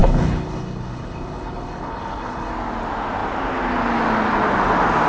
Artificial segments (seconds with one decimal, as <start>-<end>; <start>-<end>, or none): 0.0-2.5